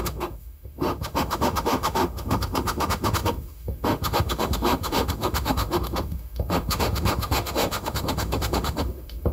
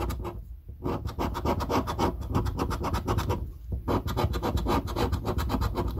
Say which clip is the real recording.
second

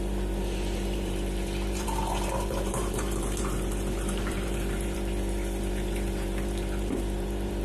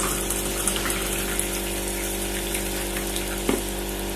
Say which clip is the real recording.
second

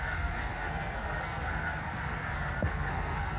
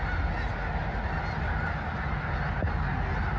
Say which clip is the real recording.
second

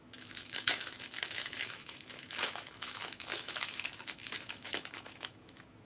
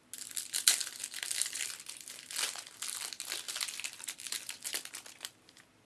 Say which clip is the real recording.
second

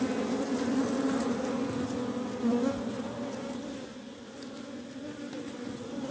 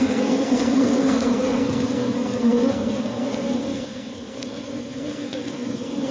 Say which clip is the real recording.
first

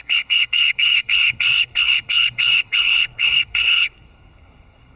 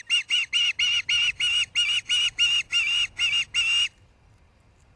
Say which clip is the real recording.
second